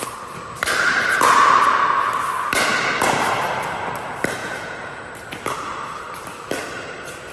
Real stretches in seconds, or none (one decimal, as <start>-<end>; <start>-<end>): 0.0-4.4; 5.0-7.3